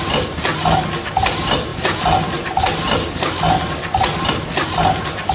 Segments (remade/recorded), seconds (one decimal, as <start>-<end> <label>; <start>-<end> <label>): 0.0-5.3 recorded